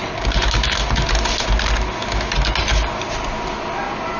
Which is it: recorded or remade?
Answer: recorded